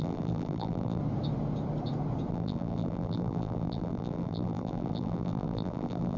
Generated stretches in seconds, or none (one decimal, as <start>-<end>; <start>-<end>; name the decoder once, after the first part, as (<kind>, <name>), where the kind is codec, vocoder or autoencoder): 0.0-1.0 (vocoder, BigVGAN v2); 2.3-6.2